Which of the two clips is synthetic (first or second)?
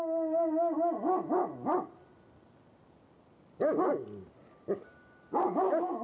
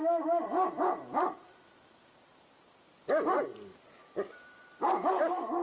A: second